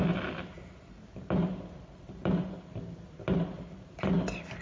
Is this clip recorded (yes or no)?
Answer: yes